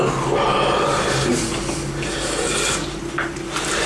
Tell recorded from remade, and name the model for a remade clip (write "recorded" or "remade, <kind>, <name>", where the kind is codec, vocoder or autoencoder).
recorded